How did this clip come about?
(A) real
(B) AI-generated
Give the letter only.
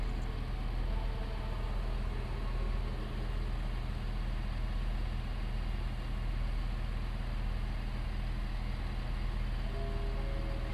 A